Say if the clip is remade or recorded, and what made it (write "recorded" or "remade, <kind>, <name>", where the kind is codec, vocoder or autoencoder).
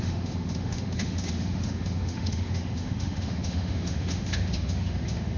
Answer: remade, autoencoder, DAC-VAE